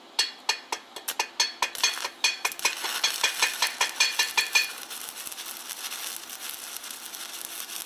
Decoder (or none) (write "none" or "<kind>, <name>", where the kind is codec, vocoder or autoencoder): none